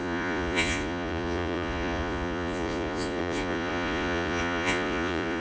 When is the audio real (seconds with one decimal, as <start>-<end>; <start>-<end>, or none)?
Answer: none